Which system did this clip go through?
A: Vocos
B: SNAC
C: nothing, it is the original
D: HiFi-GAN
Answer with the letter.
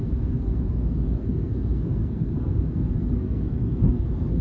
B